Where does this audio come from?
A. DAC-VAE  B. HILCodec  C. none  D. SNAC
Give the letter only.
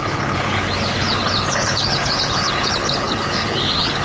B